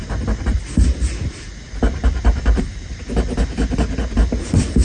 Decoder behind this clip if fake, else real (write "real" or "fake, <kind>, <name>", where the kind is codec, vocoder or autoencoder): real